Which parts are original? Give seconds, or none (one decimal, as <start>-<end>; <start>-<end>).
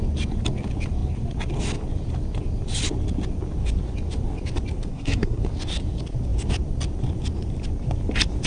0.0-4.9; 5.4-8.5